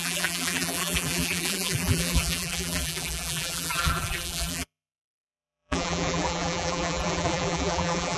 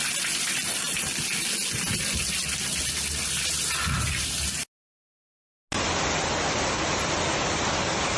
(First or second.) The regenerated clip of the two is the first